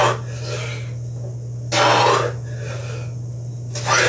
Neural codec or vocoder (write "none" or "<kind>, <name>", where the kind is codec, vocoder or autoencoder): none